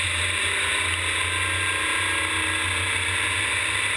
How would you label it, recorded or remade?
recorded